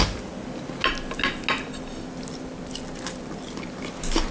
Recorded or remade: recorded